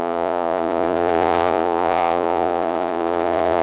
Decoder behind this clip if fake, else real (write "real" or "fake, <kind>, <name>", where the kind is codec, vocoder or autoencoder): fake, vocoder, Vocos